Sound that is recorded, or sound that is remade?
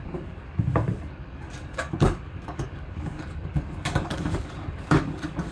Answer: remade